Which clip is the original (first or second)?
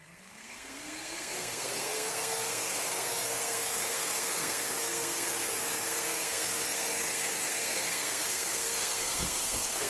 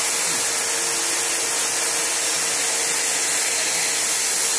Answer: second